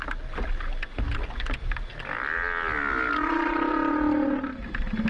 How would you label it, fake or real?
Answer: real